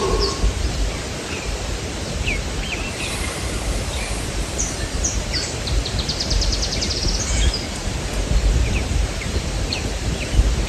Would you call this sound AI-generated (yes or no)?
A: yes